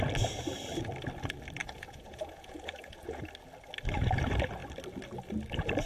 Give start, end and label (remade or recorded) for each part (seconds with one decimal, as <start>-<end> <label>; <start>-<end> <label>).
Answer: 0.0-1.6 recorded; 1.6-3.2 remade; 3.2-5.9 recorded

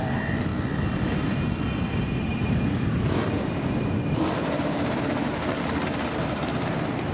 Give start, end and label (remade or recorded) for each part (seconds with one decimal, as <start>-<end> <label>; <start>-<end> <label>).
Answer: 0.0-0.5 remade; 0.5-1.2 recorded; 1.2-7.1 remade